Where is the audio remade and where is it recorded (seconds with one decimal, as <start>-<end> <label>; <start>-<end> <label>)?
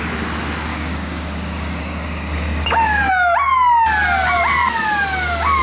0.0-0.7 recorded; 0.7-3.1 remade; 3.1-5.6 recorded